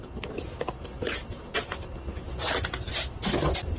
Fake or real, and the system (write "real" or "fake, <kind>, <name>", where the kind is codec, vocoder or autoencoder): real